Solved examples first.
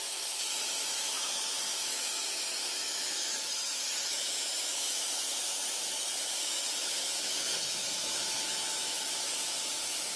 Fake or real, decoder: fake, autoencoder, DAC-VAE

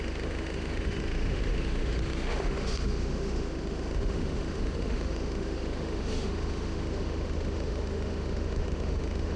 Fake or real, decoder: fake, autoencoder, DAC-VAE